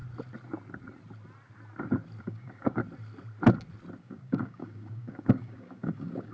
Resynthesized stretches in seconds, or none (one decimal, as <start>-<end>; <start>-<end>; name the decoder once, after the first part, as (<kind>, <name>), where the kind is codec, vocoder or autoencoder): 2.2-2.8 (codec, DAC); 4.0-6.3